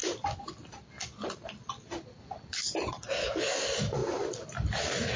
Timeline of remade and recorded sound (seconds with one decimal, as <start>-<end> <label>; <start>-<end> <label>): 0.0-5.2 recorded